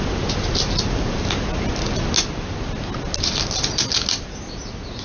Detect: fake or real real